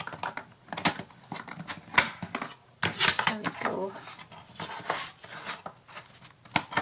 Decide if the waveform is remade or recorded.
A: recorded